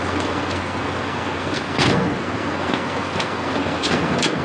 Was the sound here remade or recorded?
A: remade